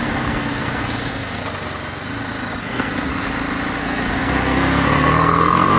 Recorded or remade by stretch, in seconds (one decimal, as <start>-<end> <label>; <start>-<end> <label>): 0.0-1.4 remade; 1.4-2.6 recorded; 2.6-3.1 remade; 3.1-3.8 recorded; 3.8-5.8 remade

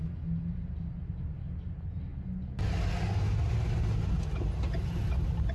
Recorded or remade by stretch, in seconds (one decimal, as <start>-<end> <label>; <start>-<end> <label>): 0.0-5.5 recorded

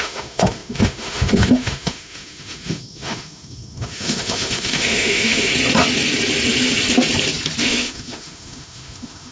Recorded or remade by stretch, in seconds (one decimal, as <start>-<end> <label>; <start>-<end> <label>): 0.0-5.5 remade; 5.5-7.6 recorded; 7.6-9.3 remade

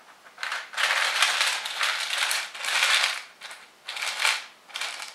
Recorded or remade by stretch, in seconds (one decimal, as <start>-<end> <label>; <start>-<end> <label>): 0.0-5.1 recorded

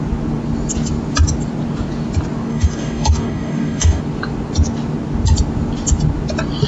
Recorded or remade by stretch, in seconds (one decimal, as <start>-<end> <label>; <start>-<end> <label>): 0.0-2.5 recorded; 2.5-4.0 remade; 4.0-6.7 recorded